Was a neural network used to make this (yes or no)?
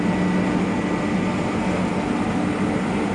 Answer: no